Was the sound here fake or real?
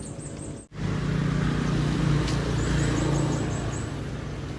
real